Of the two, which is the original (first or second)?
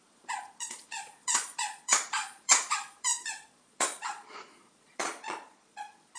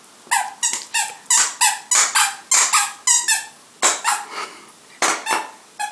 second